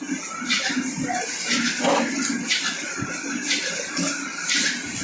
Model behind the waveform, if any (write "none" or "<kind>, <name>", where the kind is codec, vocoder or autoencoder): none